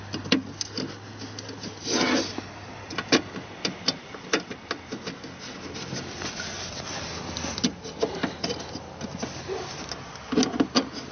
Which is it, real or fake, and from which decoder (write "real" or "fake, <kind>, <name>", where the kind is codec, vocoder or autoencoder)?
real